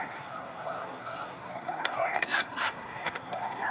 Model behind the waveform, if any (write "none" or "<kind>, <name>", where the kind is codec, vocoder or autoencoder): codec, SNAC